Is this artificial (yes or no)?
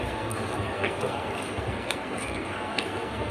yes